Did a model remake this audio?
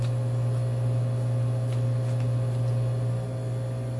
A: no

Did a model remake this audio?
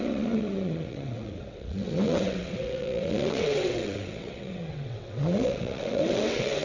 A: yes